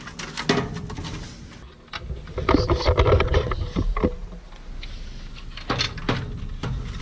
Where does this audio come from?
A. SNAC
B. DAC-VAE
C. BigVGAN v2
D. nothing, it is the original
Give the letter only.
D